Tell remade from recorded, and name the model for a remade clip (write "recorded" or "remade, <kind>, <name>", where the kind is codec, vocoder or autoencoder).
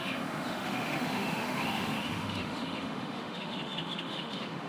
remade, autoencoder, DAC-VAE